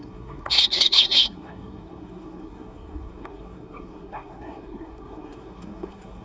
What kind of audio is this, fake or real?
fake